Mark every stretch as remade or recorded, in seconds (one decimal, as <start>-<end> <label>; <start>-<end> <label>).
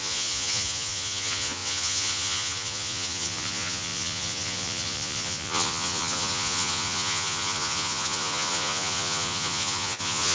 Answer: 0.0-10.3 remade